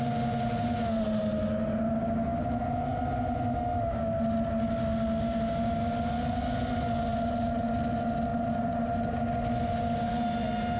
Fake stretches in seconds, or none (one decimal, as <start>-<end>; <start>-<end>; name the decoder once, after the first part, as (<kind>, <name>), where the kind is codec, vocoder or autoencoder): 7.1-7.6 (vocoder, BigVGAN v2); 8.3-9.2